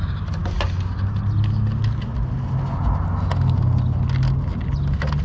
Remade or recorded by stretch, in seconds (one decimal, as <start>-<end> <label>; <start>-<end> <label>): 0.0-5.2 recorded